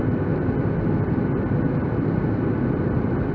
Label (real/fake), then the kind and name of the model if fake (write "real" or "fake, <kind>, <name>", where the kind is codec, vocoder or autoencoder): real